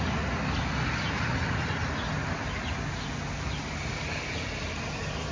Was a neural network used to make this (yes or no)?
no